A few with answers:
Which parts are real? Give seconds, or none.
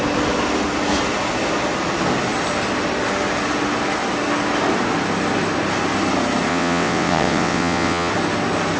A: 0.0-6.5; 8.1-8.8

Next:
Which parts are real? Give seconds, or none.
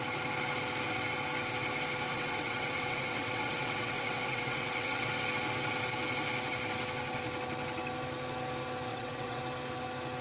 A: 0.0-2.1; 5.1-8.9; 9.4-10.2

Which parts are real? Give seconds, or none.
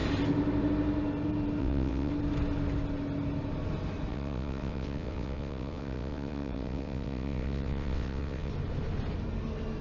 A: 0.0-1.6; 2.1-4.1; 8.5-9.8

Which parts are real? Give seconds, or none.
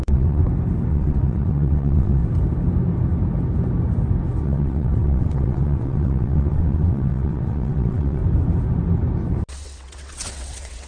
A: 0.4-0.9; 2.2-4.4; 8.2-9.5